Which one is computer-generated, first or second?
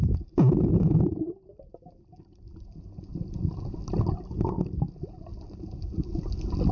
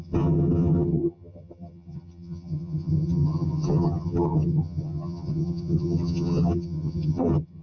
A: second